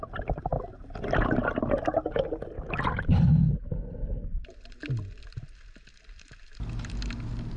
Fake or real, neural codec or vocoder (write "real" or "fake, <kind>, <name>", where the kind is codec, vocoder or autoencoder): real